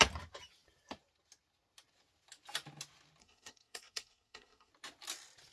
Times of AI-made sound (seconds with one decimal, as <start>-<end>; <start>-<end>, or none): 3.2-4.7